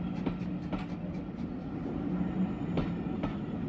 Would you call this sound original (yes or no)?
yes